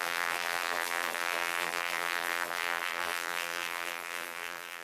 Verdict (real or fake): fake